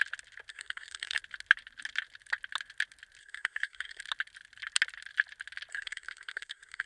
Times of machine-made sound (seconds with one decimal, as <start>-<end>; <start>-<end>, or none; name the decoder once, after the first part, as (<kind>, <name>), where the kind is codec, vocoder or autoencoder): 0.5-1.2 (codec, SNAC); 3.2-4.0; 5.7-6.9